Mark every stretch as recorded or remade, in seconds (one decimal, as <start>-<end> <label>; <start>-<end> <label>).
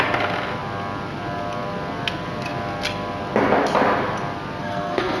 0.0-4.6 recorded; 4.6-5.2 remade